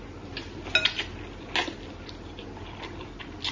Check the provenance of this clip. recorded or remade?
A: recorded